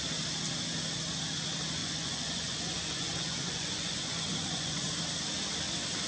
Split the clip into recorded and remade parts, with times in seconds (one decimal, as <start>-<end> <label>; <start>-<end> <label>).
0.0-1.8 recorded; 1.8-5.0 remade; 5.0-6.1 recorded